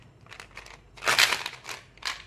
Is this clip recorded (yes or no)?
yes